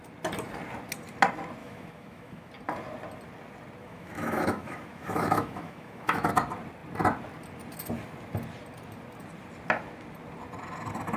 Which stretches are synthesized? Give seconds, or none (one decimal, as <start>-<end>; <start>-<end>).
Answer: 1.6-2.5; 3.8-6.3